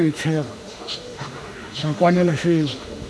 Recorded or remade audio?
remade